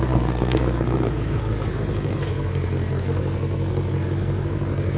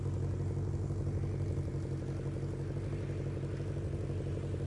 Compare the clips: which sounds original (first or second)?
second